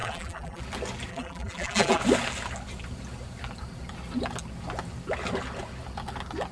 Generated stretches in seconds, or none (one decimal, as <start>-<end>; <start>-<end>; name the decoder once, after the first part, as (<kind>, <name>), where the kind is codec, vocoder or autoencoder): 0.0-0.6 (vocoder, BigVGAN v2); 1.1-2.0